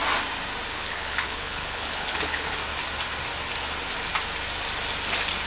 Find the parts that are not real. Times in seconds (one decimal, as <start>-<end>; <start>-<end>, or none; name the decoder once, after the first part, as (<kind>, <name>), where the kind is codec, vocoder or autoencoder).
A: 0.7-2.6 (codec, HILCodec)